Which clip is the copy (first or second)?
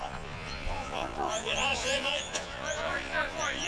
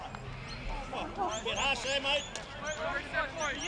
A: first